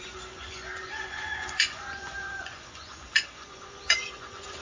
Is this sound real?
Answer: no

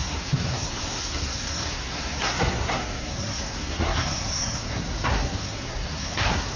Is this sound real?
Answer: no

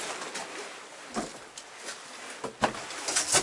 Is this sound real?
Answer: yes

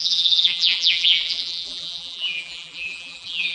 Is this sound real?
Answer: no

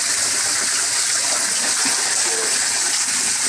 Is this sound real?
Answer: yes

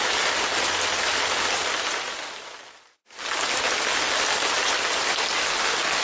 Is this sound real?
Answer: yes